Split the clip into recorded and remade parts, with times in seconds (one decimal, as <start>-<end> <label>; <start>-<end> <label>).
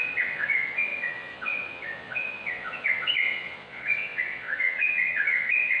0.0-5.8 remade